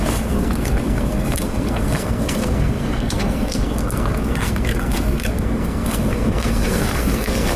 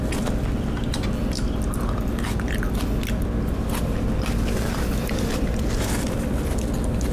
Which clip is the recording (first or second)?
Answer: second